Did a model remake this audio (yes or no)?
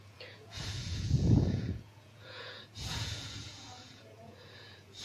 yes